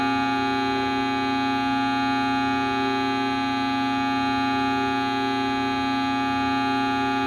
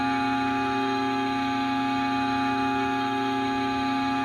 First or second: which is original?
first